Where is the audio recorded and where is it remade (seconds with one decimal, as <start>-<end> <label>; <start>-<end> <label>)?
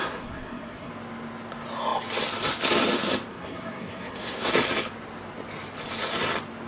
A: 0.0-0.9 remade; 0.9-3.3 recorded; 3.3-4.5 remade; 4.5-6.7 recorded